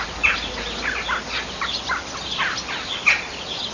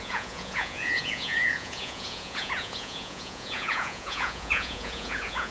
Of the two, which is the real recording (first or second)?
first